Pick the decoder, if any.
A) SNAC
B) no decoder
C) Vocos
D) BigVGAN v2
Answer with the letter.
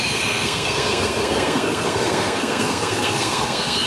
A